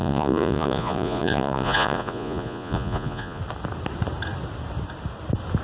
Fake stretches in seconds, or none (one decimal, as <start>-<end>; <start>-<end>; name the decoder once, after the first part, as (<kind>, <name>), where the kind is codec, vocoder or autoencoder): 0.0-3.4 (vocoder, Vocos)